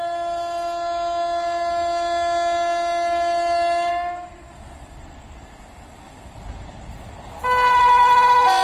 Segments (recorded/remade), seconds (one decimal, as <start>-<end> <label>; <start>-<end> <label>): 0.0-3.9 recorded; 3.9-4.5 remade; 4.5-8.6 recorded